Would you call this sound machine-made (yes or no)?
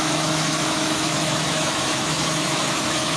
yes